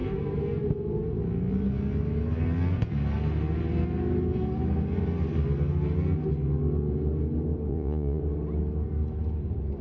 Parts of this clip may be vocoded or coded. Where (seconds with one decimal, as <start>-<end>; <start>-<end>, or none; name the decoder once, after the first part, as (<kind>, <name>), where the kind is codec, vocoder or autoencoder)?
7.7-8.2 (vocoder, Vocos)